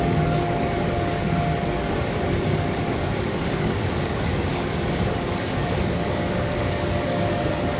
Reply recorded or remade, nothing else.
remade